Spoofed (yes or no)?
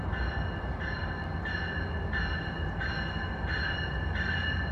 no